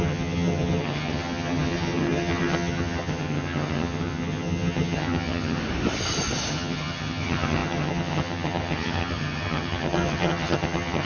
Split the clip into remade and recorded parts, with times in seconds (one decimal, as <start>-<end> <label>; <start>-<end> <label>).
0.0-5.6 remade; 5.6-6.5 recorded; 6.5-11.1 remade